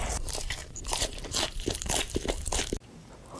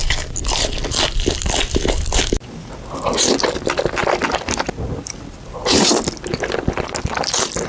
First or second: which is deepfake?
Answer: first